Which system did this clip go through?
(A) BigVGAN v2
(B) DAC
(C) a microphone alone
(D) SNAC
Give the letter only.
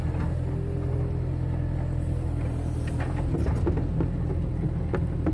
C